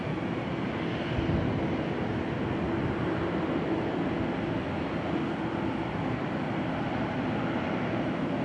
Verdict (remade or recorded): recorded